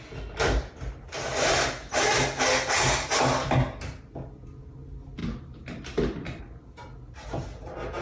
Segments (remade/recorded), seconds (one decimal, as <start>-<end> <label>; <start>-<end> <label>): 0.0-8.0 recorded